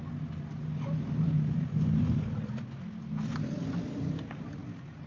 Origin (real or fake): real